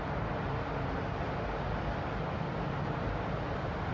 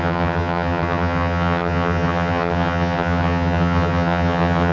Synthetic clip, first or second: second